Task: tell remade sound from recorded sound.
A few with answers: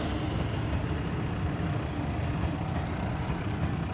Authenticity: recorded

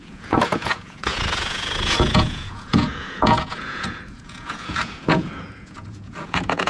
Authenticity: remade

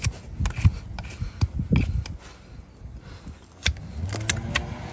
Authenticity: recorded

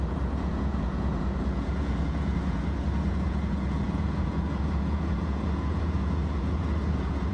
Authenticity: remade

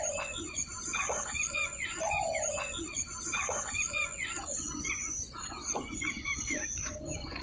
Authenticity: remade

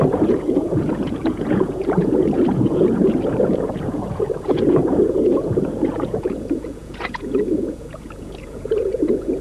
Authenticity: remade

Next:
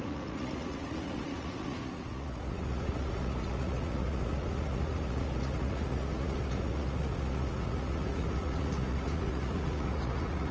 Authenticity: remade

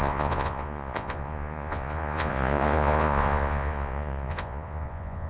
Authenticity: remade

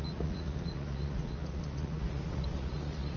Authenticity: remade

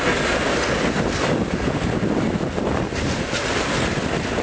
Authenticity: recorded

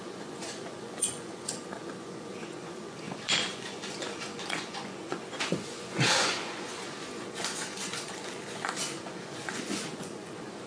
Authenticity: remade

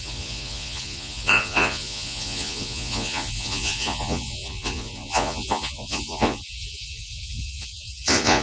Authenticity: remade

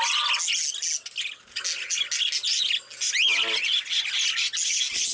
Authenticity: recorded